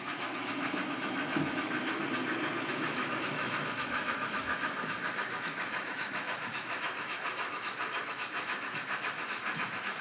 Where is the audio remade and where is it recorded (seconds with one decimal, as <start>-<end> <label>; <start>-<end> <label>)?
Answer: 0.0-2.0 remade; 2.0-2.7 recorded; 2.7-10.0 remade